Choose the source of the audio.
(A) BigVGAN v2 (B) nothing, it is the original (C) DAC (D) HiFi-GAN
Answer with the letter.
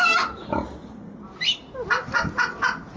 B